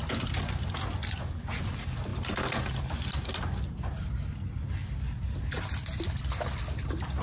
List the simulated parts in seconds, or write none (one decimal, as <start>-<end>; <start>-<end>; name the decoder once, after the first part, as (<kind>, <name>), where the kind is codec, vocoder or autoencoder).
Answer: none